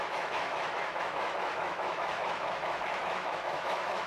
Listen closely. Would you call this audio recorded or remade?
remade